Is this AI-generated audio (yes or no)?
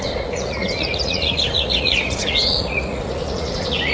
yes